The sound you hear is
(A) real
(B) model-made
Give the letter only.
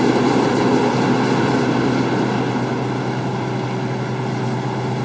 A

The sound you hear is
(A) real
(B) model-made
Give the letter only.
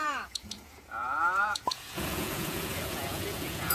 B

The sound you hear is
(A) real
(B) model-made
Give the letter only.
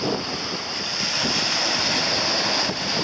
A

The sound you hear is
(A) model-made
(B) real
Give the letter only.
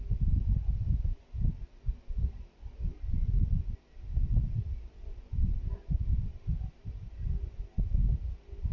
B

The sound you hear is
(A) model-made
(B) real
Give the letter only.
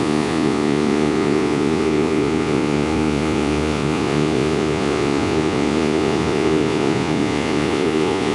A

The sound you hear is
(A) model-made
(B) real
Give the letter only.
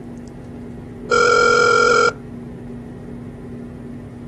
B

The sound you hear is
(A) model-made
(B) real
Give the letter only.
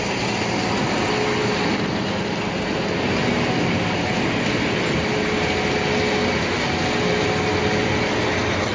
B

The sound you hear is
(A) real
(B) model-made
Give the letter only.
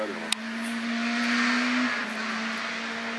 A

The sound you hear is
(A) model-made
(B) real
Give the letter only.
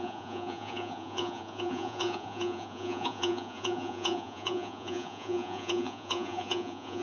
A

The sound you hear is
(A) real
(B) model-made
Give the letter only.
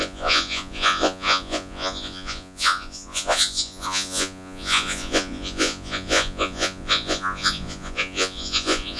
B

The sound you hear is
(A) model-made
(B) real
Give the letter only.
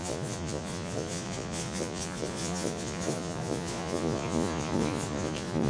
A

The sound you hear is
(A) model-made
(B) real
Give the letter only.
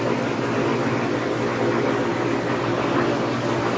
B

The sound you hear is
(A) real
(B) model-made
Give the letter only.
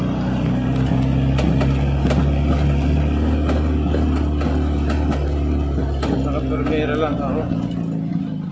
A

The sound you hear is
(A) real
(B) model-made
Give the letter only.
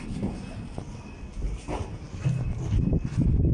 A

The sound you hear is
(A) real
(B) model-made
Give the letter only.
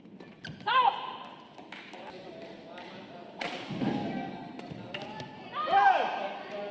A